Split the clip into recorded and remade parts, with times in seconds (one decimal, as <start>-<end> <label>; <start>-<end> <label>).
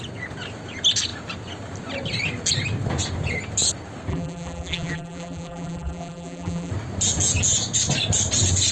0.0-4.1 recorded; 4.1-6.7 remade; 6.7-8.7 recorded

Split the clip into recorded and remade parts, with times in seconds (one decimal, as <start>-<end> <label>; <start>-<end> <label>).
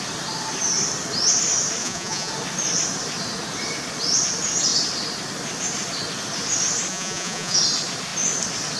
0.0-1.8 recorded; 1.8-2.3 remade; 2.3-6.9 recorded; 6.9-7.6 remade; 7.6-8.8 recorded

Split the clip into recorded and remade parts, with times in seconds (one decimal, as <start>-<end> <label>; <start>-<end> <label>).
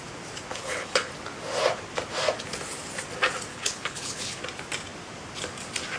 0.0-0.5 recorded; 0.5-1.1 remade; 1.1-3.5 recorded; 3.5-4.4 remade; 4.4-6.0 recorded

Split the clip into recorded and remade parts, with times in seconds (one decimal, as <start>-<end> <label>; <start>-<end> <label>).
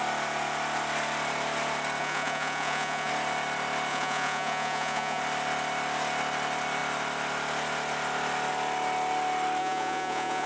0.0-2.0 recorded; 2.0-3.1 remade; 3.1-3.9 recorded; 3.9-5.2 remade; 5.2-9.6 recorded; 9.6-10.5 remade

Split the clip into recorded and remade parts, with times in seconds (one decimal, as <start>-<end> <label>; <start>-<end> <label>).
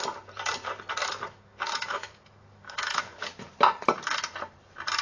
0.0-1.0 recorded; 1.0-3.0 remade; 3.0-5.0 recorded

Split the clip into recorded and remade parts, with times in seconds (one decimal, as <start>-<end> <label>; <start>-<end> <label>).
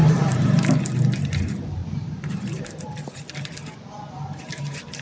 0.0-0.8 remade; 0.8-1.8 recorded; 1.8-2.7 remade; 2.7-5.0 recorded